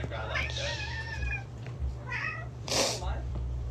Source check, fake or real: fake